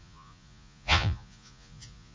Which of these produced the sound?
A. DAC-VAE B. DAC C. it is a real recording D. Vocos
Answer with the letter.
D